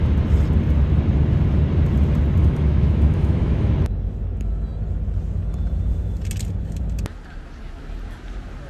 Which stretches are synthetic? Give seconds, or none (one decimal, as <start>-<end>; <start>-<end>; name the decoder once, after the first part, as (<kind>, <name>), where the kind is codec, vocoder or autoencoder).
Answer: 2.4-3.7 (autoencoder, DAC-VAE)